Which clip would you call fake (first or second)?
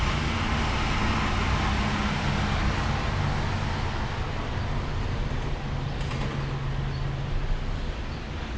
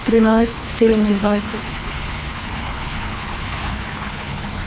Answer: second